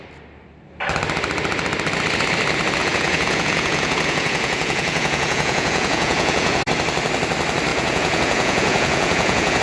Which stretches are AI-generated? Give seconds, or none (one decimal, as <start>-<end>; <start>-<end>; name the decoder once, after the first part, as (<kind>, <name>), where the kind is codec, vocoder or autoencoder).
2.8-6.6 (vocoder, Vocos); 7.7-9.6